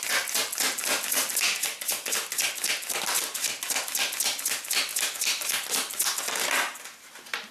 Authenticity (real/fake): real